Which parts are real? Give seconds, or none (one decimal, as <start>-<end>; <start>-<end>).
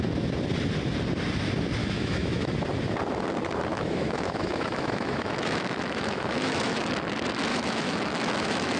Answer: 0.0-1.8; 2.5-3.7; 6.9-7.5